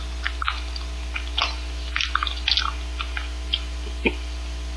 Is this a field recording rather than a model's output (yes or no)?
yes